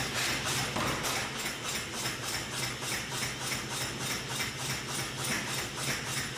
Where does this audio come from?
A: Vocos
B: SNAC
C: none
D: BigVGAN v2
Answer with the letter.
C